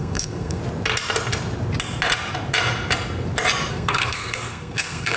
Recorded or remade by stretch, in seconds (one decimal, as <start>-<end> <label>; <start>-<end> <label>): 0.0-0.6 remade; 0.6-3.7 recorded; 3.7-5.2 remade